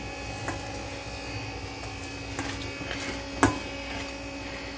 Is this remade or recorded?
recorded